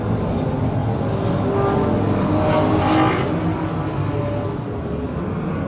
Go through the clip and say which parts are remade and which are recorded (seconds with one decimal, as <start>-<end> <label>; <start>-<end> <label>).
0.0-5.7 recorded